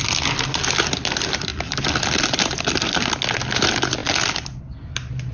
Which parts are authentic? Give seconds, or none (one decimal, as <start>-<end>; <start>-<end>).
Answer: 0.0-5.3